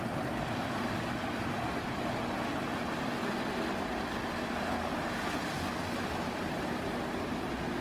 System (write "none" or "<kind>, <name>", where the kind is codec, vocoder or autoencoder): none